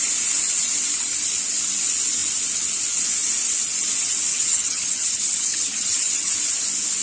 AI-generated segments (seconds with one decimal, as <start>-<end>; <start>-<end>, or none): 4.3-6.3